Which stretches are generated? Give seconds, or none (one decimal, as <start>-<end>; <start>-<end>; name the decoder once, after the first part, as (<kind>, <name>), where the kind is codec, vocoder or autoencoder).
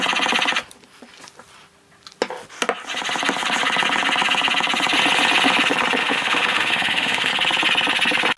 6.0-7.3 (autoencoder, DAC-VAE)